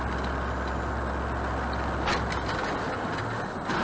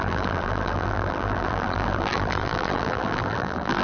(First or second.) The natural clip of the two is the first